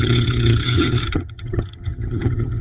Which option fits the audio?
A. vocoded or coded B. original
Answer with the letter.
A